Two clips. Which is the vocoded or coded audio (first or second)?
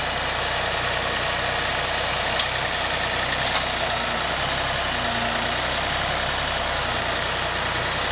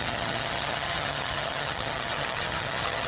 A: second